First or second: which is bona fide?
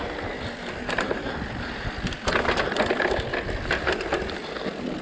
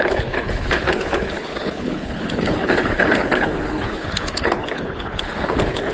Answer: first